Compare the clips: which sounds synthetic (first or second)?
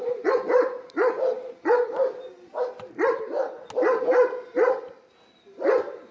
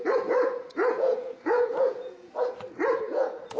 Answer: second